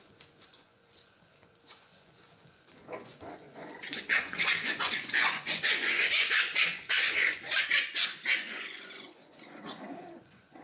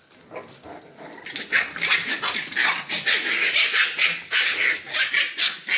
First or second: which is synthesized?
first